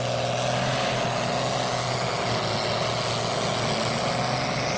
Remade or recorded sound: recorded